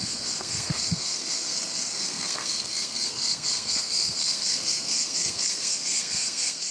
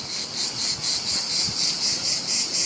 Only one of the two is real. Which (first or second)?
second